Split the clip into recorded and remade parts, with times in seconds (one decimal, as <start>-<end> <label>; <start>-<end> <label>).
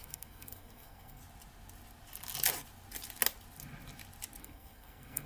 0.0-1.2 remade; 1.2-4.4 recorded; 4.4-5.3 remade